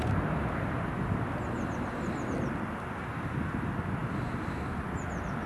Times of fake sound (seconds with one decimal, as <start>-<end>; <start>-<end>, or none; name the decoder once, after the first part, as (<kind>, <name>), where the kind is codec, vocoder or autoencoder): none